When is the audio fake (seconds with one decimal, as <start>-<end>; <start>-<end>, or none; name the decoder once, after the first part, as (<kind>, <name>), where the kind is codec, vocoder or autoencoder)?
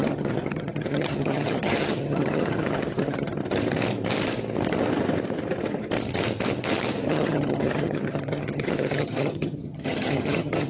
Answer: 0.0-3.4 (vocoder, HiFi-GAN); 7.1-10.7